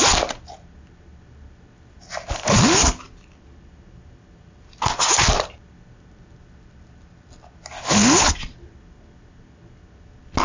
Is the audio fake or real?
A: real